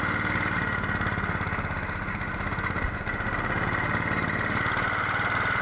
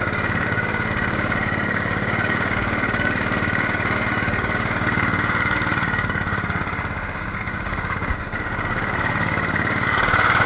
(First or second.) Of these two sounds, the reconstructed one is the second